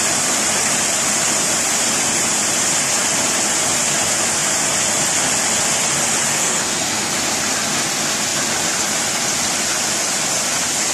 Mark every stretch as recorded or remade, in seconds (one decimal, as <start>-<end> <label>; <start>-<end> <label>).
0.0-6.3 recorded; 6.3-7.1 remade; 7.1-10.9 recorded